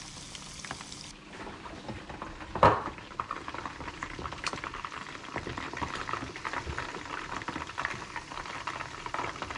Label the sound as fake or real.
real